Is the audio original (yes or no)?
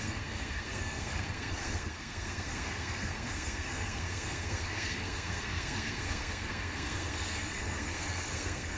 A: no